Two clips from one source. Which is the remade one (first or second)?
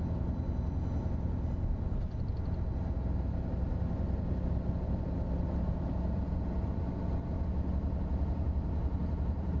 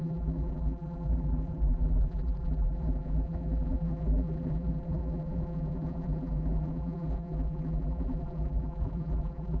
second